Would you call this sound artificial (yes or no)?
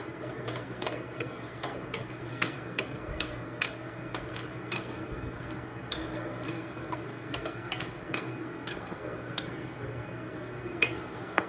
yes